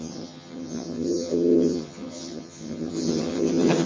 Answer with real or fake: fake